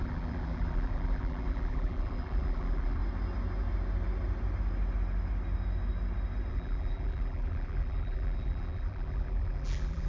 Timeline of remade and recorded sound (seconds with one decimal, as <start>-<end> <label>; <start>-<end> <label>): 0.0-3.0 remade; 3.0-6.5 recorded; 6.5-10.1 remade